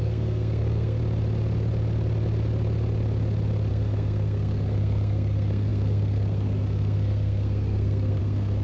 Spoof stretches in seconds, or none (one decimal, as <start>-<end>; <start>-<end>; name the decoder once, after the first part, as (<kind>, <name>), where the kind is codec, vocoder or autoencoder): 0.0-1.0 (codec, SNAC); 3.7-8.6